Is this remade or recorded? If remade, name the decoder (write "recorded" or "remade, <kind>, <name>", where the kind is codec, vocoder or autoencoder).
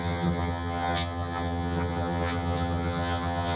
remade, vocoder, HiFi-GAN